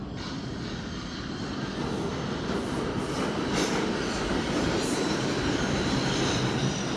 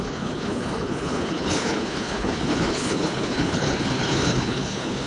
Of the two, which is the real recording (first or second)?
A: first